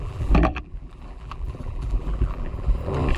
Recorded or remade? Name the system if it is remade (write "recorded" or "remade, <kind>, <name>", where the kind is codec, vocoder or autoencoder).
remade, vocoder, BigVGAN v2